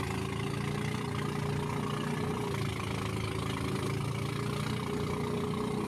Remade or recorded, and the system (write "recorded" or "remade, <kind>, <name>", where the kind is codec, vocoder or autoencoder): recorded